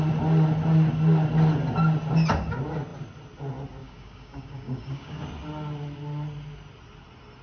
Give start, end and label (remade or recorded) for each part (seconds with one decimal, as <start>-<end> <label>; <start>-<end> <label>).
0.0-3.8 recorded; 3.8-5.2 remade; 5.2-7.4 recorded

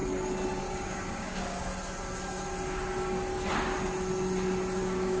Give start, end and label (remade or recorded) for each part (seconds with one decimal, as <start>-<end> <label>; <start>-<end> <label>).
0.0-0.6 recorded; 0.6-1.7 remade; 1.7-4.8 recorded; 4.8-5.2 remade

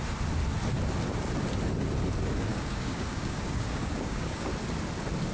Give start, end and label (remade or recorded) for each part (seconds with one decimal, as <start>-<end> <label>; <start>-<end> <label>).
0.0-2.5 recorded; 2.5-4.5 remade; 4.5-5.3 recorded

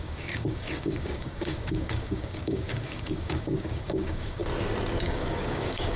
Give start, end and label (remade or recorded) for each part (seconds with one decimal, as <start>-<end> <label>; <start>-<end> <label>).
0.0-4.4 remade; 4.4-5.0 recorded; 5.0-6.0 remade

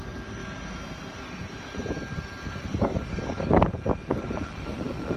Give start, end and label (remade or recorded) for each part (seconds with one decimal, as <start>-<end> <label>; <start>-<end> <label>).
0.0-2.7 recorded; 2.7-3.6 remade; 3.6-5.2 recorded

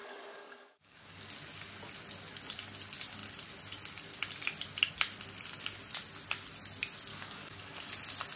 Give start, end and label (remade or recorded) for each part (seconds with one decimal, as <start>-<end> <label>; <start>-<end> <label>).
0.0-1.3 remade; 1.3-7.1 recorded; 7.1-7.8 remade; 7.8-8.4 recorded

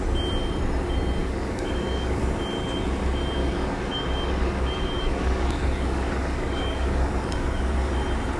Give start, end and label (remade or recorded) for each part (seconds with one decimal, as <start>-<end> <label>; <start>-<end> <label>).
0.0-1.2 recorded; 1.2-2.2 remade; 2.2-3.4 recorded; 3.4-7.7 remade; 7.7-8.4 recorded

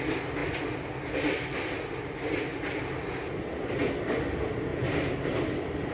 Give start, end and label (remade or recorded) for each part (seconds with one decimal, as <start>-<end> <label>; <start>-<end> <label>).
0.0-5.9 recorded